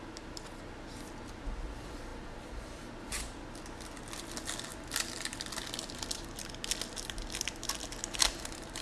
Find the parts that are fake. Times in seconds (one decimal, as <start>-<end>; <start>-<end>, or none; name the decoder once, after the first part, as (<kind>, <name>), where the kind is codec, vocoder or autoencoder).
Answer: none